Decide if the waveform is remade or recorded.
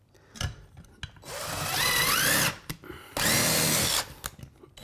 recorded